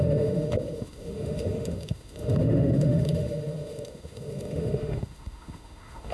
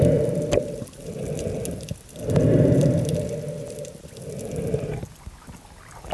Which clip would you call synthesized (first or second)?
first